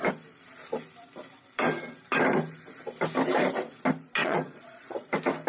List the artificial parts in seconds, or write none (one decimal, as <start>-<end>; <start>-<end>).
4.2-5.1

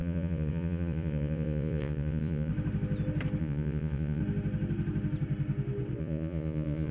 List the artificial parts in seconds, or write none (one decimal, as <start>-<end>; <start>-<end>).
0.0-2.5; 3.4-4.2; 6.0-6.9

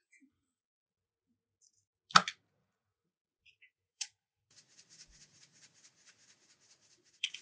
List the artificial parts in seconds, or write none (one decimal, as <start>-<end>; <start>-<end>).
0.0-1.1; 2.6-7.4

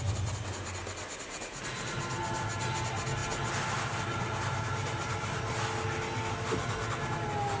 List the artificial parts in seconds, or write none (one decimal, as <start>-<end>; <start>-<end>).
none

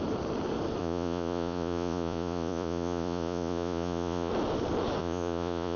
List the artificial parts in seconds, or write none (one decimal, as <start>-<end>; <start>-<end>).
0.8-4.3; 5.0-5.8

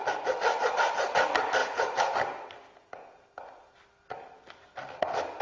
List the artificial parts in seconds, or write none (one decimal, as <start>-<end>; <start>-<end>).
1.6-2.1